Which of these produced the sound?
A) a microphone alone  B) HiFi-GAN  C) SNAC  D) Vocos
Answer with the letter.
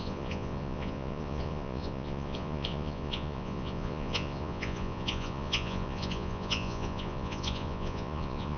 D